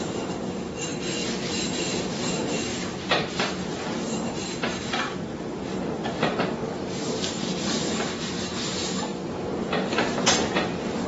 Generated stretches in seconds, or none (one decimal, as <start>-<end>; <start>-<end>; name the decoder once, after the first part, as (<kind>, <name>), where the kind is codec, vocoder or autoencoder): 0.0-0.9 (vocoder, BigVGAN v2); 1.5-2.7; 3.4-9.1; 10.5-11.1